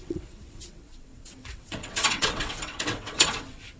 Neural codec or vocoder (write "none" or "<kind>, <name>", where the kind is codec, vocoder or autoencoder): vocoder, WaveNeXt